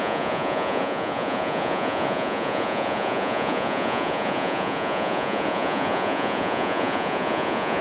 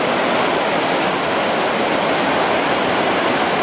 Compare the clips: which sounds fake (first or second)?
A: first